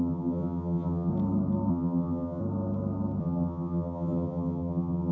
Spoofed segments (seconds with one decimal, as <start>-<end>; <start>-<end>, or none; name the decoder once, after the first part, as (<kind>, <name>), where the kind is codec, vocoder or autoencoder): 0.0-1.1 (vocoder, HiFi-GAN); 1.7-2.4; 3.2-5.1